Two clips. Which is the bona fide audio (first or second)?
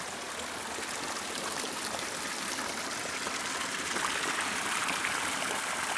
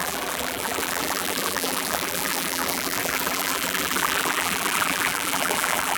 first